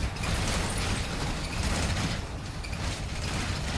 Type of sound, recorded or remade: remade